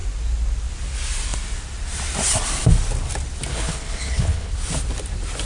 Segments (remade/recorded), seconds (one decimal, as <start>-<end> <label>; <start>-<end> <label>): 0.0-3.5 recorded; 3.5-4.5 remade; 4.5-5.5 recorded